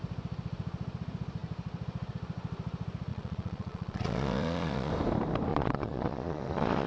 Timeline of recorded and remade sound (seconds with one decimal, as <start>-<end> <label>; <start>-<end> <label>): 0.0-3.1 recorded; 3.1-4.9 remade; 4.9-5.5 recorded; 5.5-6.9 remade